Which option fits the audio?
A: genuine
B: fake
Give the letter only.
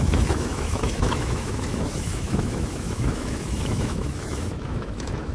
B